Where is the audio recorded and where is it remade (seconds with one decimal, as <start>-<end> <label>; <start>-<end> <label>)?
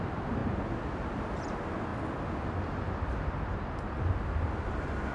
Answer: 0.0-5.1 recorded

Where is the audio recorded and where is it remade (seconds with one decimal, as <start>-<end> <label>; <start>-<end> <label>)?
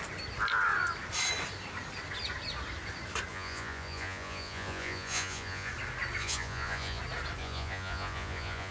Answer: 0.0-3.3 recorded; 3.3-5.7 remade; 5.7-6.2 recorded; 6.2-7.0 remade; 7.0-7.4 recorded; 7.4-8.7 remade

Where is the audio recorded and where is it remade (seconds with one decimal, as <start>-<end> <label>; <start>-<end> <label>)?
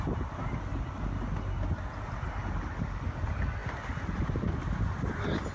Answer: 0.0-5.5 recorded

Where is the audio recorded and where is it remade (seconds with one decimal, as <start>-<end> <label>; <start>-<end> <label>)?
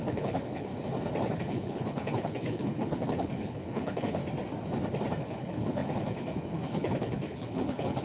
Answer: 0.0-0.7 remade; 0.7-1.3 recorded; 1.3-4.2 remade; 4.2-5.2 recorded; 5.2-8.0 remade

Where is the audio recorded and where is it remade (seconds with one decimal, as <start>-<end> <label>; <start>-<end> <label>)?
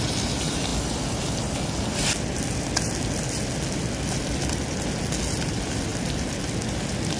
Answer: 0.0-7.2 recorded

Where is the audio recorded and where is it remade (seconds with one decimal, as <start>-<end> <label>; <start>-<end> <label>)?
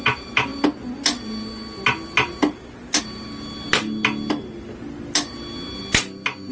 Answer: 0.0-6.5 recorded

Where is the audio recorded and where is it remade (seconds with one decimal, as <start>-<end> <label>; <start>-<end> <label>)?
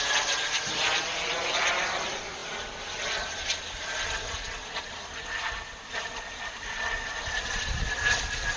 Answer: 0.0-8.6 recorded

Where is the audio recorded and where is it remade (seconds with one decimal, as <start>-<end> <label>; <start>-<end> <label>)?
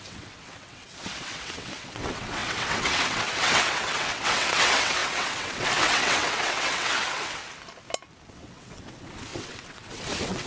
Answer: 0.0-7.4 remade; 7.4-8.3 recorded; 8.3-10.5 remade